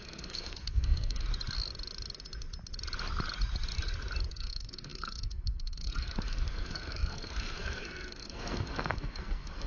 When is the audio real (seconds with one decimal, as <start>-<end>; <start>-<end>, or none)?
1.3-4.3

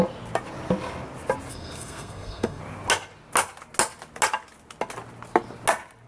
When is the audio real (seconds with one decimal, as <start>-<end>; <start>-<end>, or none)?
0.0-1.5; 2.6-6.1

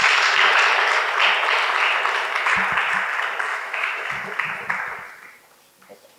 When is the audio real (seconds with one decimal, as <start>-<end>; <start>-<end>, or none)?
0.0-3.5; 4.1-6.2